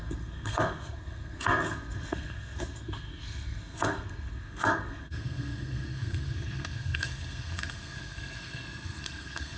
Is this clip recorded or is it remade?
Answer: remade